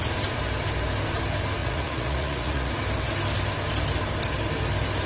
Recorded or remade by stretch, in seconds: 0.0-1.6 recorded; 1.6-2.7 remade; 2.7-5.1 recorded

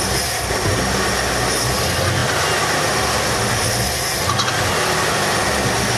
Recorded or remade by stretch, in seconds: 0.0-6.0 recorded